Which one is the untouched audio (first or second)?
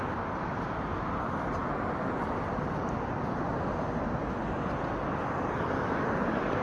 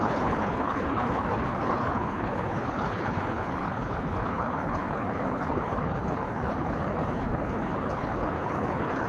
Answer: first